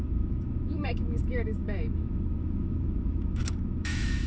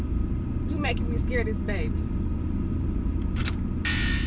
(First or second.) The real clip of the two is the second